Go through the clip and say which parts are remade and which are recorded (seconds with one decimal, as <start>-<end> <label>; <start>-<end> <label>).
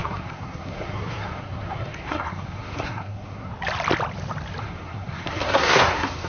0.0-3.5 remade; 3.5-4.6 recorded; 4.6-6.3 remade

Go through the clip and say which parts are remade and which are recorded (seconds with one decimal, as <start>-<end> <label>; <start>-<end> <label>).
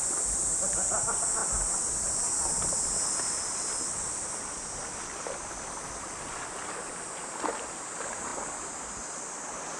0.0-9.8 recorded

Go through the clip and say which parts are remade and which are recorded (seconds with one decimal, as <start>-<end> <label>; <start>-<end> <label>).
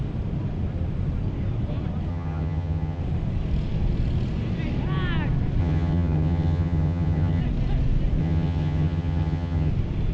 0.0-2.1 recorded; 2.1-3.0 remade; 3.0-5.6 recorded; 5.6-7.4 remade; 7.4-8.2 recorded; 8.2-9.7 remade; 9.7-10.1 recorded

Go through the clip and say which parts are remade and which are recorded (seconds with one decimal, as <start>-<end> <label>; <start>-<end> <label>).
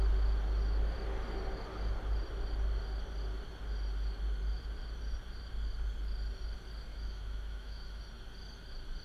0.0-6.9 recorded; 6.9-8.0 remade; 8.0-9.0 recorded